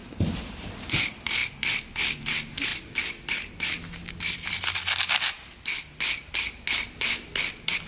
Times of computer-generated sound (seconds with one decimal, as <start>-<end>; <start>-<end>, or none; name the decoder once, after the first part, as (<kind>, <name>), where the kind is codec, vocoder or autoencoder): none